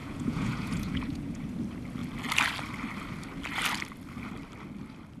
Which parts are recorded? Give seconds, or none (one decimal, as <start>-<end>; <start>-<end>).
1.4-5.2

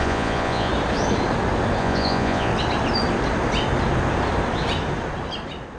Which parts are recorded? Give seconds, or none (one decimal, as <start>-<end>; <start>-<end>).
0.7-1.8; 2.5-5.8

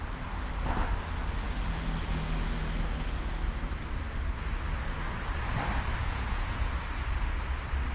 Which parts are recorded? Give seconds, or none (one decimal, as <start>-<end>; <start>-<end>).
0.0-6.0; 6.7-7.9

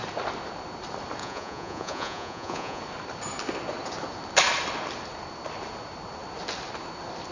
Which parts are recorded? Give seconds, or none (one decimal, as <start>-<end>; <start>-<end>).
0.0-1.2; 2.8-7.3

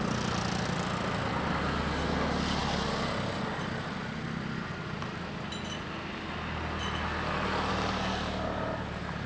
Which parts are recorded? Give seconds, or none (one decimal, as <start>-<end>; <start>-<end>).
0.0-9.3

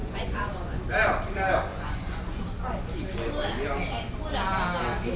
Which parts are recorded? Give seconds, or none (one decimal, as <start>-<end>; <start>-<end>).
0.8-1.7; 2.4-5.2

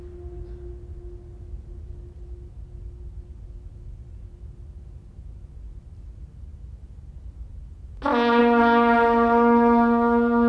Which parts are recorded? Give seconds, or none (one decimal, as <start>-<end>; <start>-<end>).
0.0-10.5

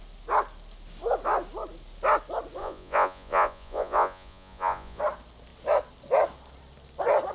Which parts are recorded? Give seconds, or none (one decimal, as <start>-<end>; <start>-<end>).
0.0-2.6; 5.0-7.3